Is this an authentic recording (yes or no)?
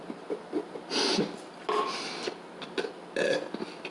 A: yes